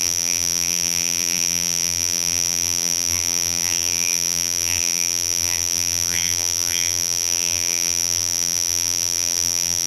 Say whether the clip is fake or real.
fake